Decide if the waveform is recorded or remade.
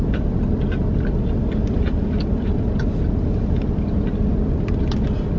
remade